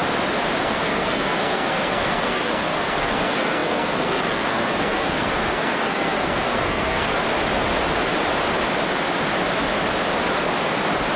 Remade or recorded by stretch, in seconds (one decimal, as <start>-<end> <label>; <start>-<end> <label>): 0.0-0.6 recorded; 0.6-7.1 remade; 7.1-11.2 recorded